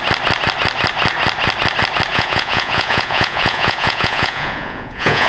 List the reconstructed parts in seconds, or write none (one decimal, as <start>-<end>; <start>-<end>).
2.1-5.3

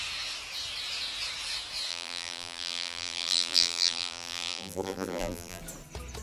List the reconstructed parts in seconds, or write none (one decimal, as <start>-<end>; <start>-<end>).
1.9-5.6

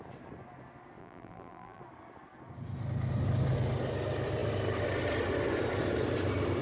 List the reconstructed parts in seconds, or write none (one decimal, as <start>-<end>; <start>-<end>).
1.0-1.8

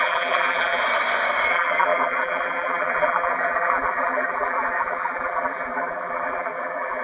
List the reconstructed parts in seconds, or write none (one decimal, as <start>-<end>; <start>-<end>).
0.0-0.8; 1.5-7.0